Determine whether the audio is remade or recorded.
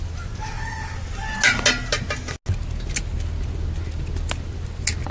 recorded